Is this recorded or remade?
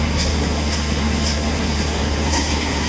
remade